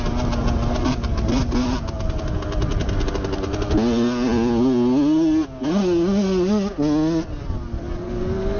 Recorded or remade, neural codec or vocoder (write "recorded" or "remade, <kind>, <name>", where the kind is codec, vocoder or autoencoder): recorded